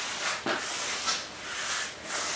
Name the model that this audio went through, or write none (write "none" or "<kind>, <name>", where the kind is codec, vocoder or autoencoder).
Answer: none